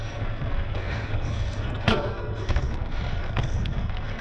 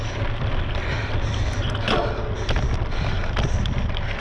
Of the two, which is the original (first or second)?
second